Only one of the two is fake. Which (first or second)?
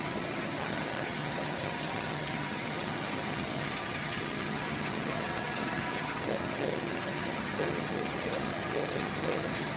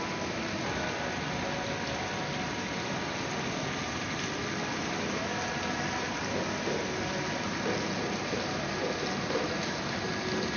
first